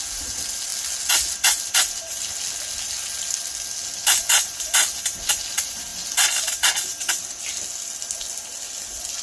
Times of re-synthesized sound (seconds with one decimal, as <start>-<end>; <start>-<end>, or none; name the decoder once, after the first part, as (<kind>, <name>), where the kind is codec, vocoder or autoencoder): none